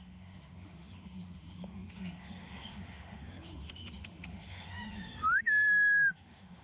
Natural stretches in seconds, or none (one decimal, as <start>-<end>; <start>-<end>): none